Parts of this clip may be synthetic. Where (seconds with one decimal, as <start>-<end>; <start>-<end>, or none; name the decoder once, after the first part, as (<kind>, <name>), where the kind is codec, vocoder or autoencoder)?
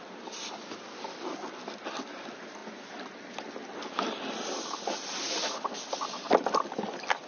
none